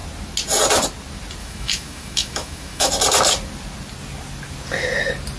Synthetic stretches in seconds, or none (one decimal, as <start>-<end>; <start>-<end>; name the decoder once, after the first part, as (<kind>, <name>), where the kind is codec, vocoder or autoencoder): 1.4-2.9 (autoencoder, DAC-VAE)